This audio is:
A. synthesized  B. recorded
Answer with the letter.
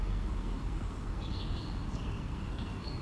A